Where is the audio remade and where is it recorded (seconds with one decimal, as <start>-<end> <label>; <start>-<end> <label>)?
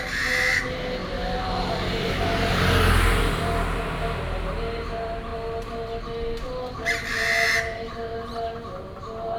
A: 0.0-9.4 recorded